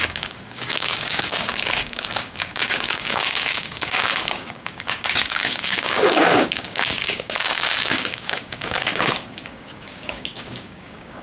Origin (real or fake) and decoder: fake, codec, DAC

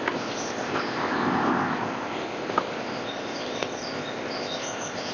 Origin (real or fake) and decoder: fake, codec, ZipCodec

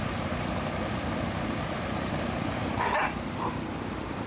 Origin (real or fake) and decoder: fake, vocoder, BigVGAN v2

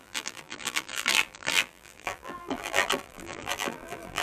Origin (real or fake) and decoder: fake, vocoder, BigVGAN v2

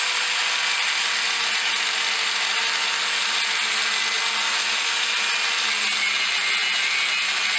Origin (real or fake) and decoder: real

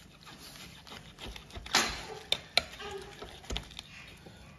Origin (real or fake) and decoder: real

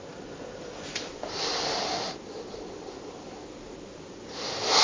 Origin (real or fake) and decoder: real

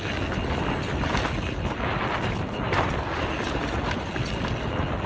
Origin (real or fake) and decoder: real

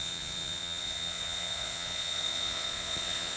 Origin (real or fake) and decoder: fake, vocoder, Vocos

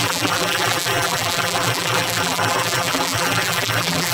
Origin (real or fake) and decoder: fake, vocoder, BigVGAN v2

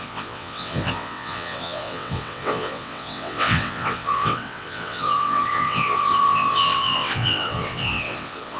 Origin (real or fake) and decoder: fake, vocoder, WaveNeXt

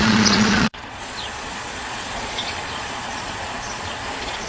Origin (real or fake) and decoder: fake, vocoder, Vocos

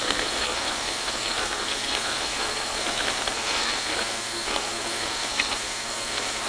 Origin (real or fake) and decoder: fake, codec, SNAC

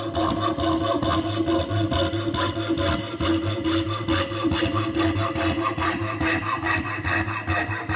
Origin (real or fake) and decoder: real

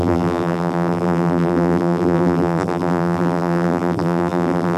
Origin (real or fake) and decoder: fake, vocoder, BigVGAN v2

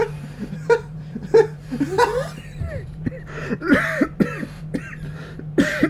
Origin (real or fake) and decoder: fake, vocoder, BigVGAN v2